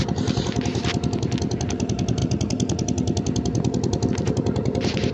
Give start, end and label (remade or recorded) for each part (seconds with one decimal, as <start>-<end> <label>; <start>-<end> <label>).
0.0-5.1 recorded